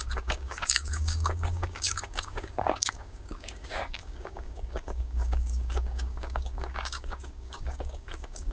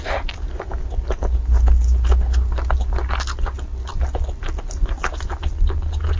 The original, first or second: second